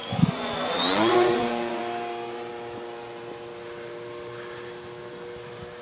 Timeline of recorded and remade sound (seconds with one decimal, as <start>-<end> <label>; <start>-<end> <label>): 0.0-1.8 remade; 1.8-5.8 recorded

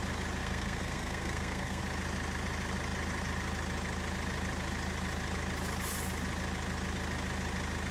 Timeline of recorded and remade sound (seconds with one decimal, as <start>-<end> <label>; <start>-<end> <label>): 0.0-0.4 recorded; 0.4-1.8 remade; 1.8-7.9 recorded

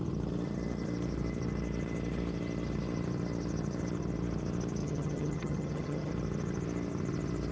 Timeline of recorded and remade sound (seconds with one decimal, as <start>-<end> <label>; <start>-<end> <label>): 0.0-4.8 recorded; 4.8-6.1 remade; 6.1-7.5 recorded